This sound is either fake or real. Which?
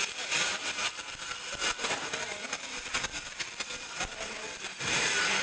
fake